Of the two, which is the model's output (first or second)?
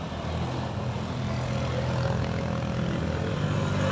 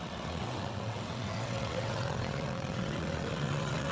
second